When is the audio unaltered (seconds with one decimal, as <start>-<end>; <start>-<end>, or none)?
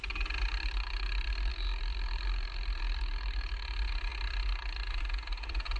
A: 0.0-5.8